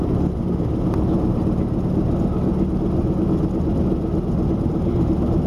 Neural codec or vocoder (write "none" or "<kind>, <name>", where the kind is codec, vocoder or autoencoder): none